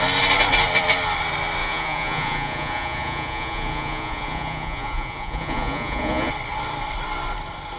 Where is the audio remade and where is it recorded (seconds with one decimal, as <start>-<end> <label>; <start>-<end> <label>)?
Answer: 0.0-1.6 recorded; 1.6-6.3 remade; 6.3-7.8 recorded